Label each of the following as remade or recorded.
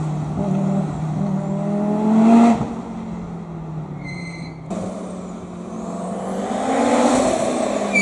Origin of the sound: recorded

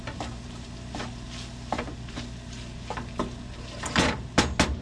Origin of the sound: recorded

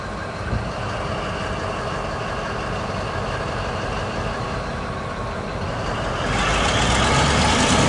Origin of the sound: recorded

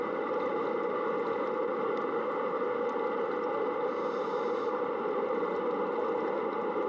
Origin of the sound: recorded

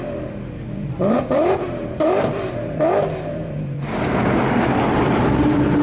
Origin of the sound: remade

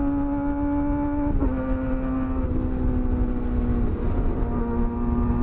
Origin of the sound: recorded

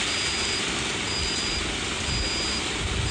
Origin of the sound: recorded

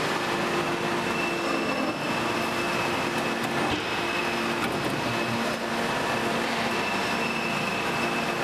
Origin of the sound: recorded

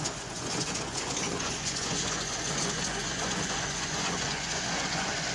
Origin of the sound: remade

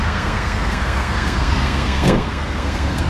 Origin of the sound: remade